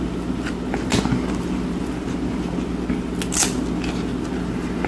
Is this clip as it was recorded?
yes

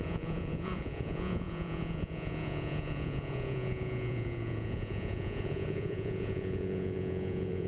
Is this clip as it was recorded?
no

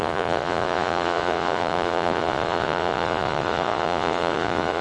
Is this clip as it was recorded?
no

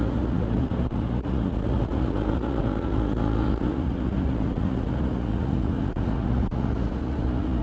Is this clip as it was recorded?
no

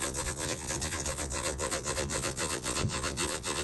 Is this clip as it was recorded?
no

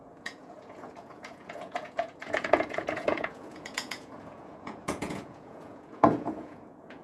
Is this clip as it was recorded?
no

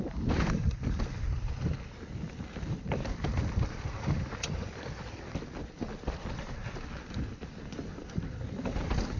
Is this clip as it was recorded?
yes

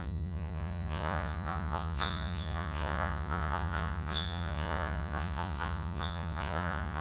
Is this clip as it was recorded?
no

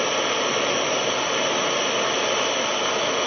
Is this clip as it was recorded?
yes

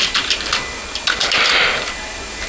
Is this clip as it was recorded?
yes